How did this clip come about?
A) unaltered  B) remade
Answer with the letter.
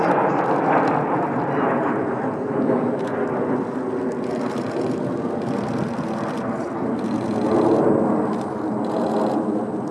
A